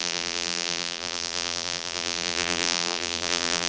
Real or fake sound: fake